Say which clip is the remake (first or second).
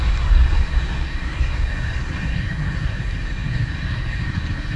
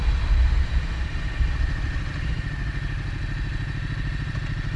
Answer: first